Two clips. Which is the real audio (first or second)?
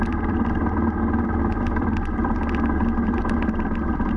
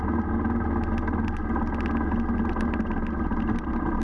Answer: second